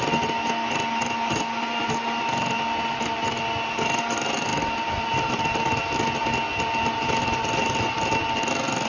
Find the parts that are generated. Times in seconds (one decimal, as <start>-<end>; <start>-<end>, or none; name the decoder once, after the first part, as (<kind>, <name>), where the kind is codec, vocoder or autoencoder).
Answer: none